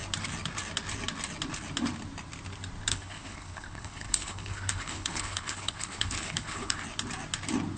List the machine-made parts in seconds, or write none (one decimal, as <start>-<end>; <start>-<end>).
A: 2.9-6.8